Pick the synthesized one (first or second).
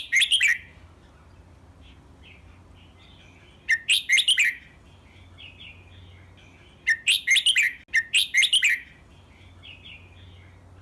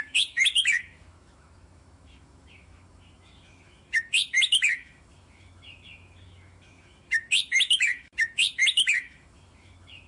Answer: second